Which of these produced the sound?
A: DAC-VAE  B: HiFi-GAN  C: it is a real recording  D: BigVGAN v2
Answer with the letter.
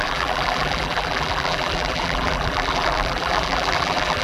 D